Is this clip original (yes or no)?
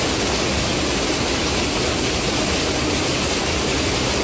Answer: yes